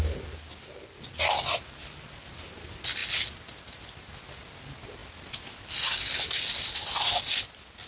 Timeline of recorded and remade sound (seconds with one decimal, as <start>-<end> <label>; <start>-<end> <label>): 0.0-7.9 recorded